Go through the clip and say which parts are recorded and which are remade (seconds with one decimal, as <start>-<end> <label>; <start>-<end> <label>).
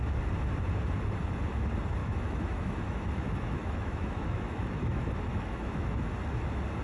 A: 0.0-2.0 recorded; 2.0-6.1 remade; 6.1-6.8 recorded